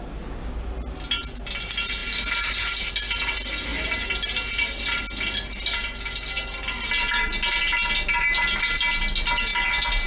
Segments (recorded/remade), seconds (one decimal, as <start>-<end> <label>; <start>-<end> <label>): 0.0-10.1 recorded

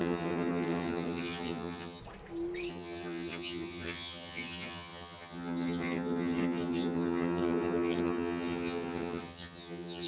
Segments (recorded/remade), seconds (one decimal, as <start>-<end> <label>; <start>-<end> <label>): 0.0-2.0 remade; 2.0-2.7 recorded; 2.7-10.1 remade